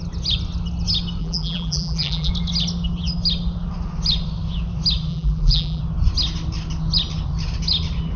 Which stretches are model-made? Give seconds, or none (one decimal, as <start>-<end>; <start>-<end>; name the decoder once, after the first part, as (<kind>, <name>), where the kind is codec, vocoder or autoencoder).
1.2-2.3 (vocoder, BigVGAN v2); 5.1-5.8